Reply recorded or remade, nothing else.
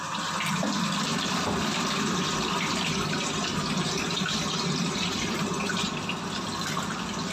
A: recorded